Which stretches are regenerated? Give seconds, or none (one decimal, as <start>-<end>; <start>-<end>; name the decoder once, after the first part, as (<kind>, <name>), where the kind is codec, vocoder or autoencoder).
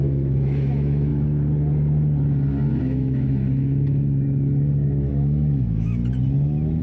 0.0-1.1 (autoencoder, DAC-VAE); 2.8-6.0